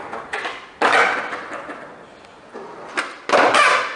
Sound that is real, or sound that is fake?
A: real